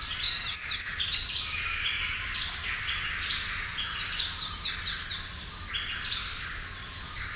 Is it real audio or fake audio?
real